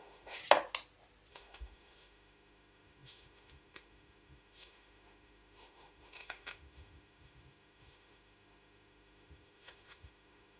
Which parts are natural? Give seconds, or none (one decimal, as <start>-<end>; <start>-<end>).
0.4-1.3